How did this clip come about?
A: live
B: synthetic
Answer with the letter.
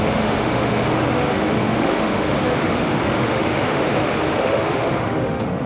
B